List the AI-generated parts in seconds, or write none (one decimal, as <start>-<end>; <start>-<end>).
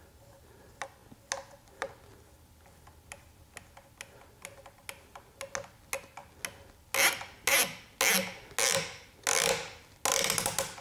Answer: none